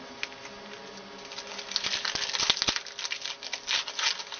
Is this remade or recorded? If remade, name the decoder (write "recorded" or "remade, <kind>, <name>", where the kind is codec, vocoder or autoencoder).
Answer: recorded